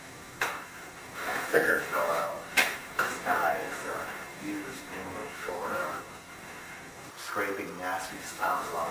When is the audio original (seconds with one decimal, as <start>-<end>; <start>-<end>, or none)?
7.1-8.1

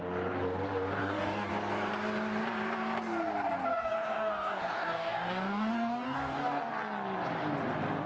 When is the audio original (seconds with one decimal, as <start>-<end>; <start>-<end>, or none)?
0.0-1.0; 1.5-3.7; 6.6-8.1